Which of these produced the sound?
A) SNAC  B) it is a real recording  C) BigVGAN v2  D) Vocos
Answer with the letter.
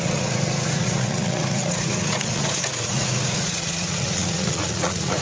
D